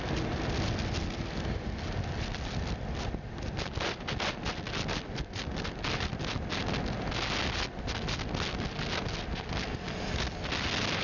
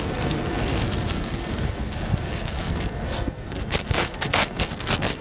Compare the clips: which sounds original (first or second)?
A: first